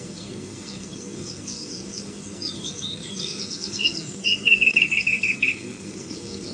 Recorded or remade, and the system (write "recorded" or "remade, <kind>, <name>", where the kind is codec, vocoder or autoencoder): remade, codec, SNAC